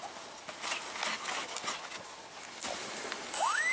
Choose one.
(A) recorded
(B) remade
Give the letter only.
A